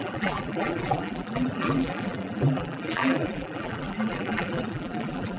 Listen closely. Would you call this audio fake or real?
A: fake